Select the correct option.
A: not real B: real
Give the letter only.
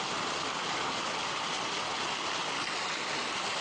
A